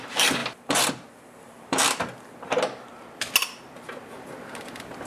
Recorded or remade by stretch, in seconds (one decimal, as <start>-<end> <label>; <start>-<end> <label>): 0.0-1.8 remade; 1.8-4.6 recorded; 4.6-5.1 remade